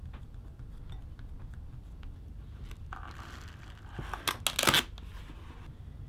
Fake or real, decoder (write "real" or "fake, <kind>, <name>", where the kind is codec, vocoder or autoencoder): real